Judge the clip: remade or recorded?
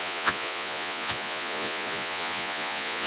remade